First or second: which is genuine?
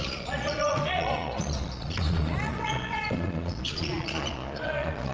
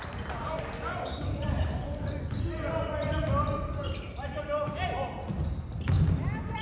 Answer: second